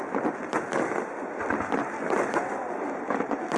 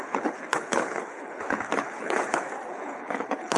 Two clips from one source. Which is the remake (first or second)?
second